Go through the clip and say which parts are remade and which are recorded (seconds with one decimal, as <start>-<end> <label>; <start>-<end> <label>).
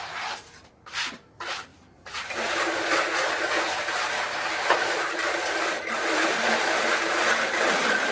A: 0.0-8.1 remade